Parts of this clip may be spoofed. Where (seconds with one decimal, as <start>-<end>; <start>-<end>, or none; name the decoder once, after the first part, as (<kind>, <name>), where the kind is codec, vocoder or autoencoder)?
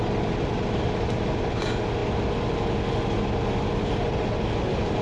none